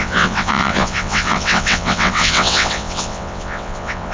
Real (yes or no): no